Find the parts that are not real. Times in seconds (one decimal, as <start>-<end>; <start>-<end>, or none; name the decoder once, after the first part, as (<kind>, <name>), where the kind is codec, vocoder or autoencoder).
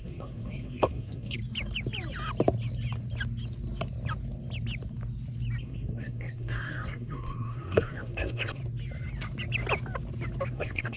0.0-1.4 (codec, SNAC); 5.6-8.6; 10.5-11.0